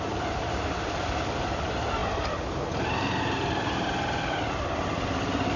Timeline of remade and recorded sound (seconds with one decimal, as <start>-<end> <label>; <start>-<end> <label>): 0.0-5.6 recorded